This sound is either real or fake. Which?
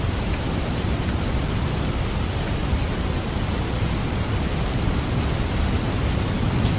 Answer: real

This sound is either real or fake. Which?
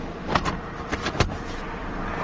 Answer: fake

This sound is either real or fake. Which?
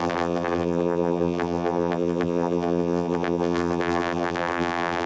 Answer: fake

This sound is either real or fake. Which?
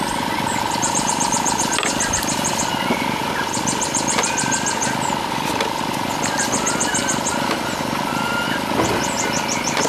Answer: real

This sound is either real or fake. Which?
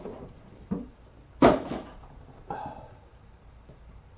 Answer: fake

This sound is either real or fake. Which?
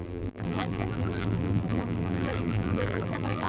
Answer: fake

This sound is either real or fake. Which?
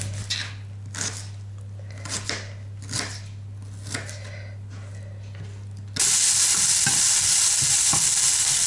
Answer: real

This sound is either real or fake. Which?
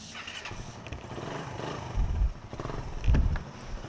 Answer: fake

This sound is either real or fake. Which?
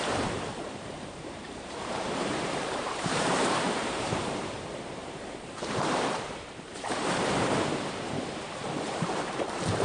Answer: fake